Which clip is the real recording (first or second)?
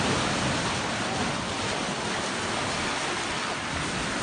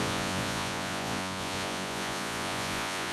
first